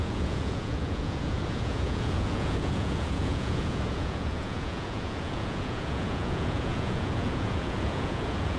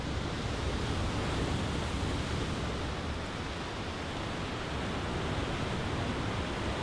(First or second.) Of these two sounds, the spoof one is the first